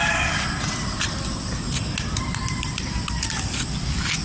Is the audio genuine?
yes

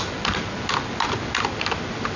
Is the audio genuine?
yes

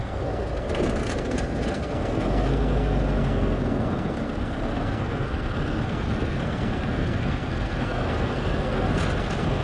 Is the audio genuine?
no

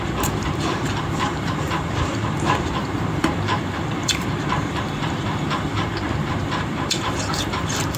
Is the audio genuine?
no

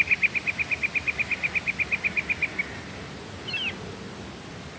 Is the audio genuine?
yes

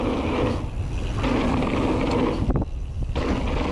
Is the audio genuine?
yes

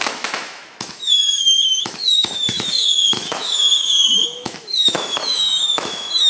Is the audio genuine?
no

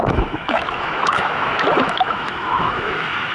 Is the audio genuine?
no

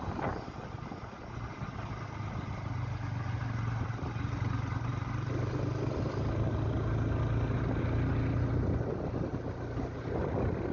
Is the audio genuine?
yes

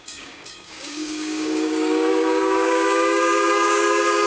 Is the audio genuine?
no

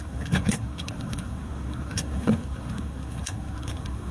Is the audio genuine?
no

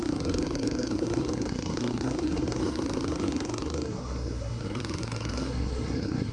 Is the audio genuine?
no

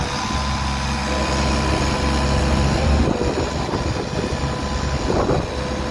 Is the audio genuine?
yes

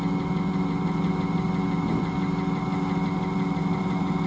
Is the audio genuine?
yes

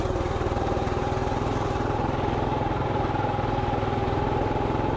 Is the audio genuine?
no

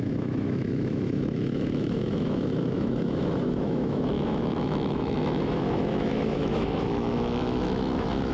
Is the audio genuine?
no